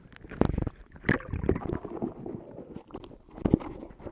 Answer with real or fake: real